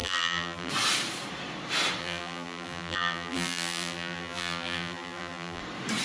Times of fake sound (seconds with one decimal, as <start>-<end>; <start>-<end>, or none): 0.0-0.7; 2.0-5.6